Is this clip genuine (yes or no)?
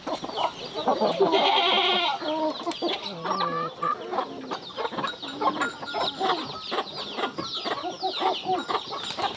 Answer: yes